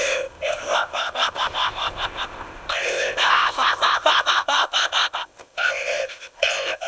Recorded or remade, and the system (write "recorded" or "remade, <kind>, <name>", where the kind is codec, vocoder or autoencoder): remade, codec, ZipCodec